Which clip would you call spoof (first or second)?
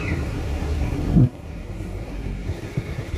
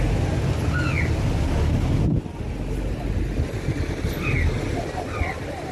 first